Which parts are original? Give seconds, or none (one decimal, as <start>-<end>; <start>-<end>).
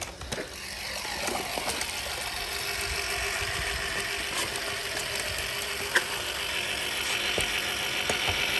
0.0-8.6